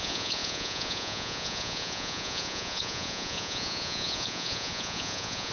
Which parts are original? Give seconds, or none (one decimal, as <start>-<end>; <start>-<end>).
none